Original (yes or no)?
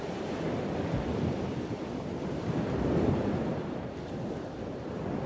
no